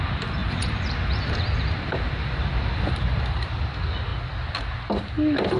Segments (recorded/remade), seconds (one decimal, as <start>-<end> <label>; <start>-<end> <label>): 0.0-0.4 recorded; 0.4-3.6 remade; 3.6-5.6 recorded